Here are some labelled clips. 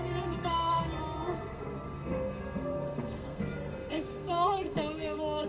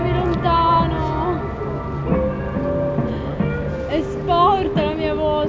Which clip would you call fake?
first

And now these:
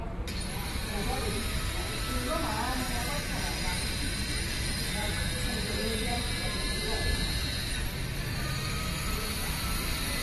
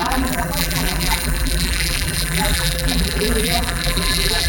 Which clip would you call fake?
second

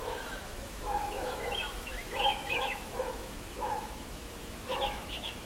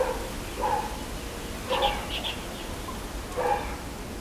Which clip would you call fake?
first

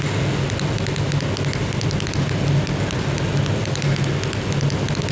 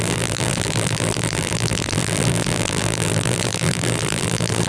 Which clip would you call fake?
second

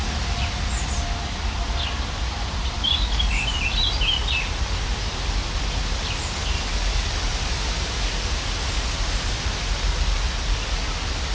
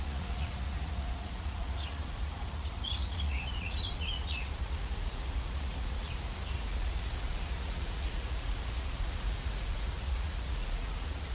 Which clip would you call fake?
second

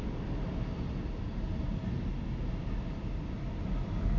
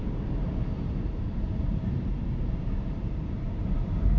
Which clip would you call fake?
second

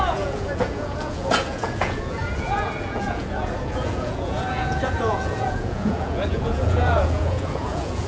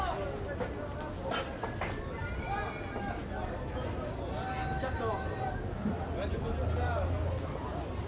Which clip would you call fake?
first